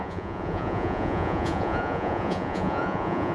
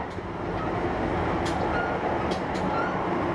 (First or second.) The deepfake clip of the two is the first